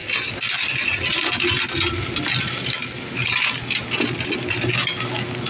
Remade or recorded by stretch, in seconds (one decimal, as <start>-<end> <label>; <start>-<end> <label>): 0.0-5.5 recorded